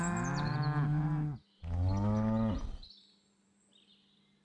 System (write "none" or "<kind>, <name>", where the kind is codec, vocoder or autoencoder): none